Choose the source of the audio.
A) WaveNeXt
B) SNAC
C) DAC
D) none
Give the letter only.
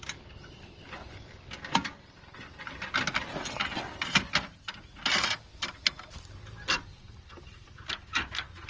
D